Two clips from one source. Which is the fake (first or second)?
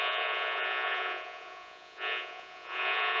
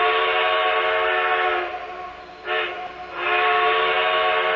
first